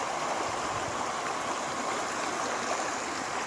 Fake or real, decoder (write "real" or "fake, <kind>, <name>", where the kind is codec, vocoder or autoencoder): real